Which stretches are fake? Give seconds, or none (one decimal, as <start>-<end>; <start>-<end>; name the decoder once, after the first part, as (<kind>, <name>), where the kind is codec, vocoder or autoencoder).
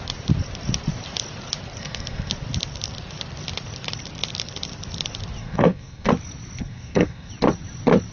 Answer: 1.8-2.3 (codec, SNAC); 5.4-6.1; 6.6-7.3